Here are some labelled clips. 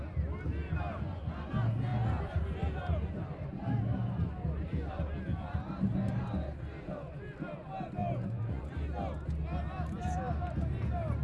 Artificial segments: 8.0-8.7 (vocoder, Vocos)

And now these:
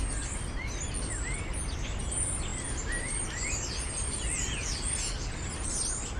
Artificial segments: none

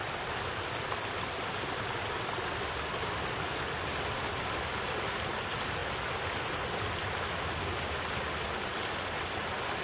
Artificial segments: none

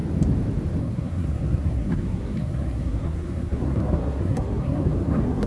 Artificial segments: 0.8-5.5 (codec, SNAC)

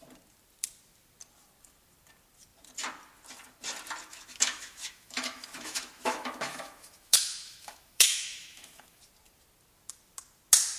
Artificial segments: 4.1-9.0 (autoencoder, DAC-VAE)

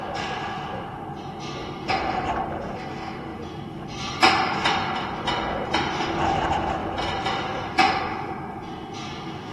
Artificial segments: 0.5-1.1 (vocoder, BigVGAN v2); 1.6-2.2; 3.3-6.2; 6.8-8.0